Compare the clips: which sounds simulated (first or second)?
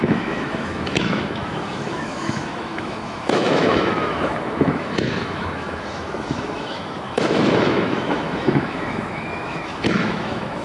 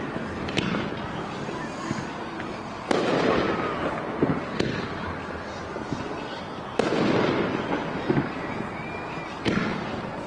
first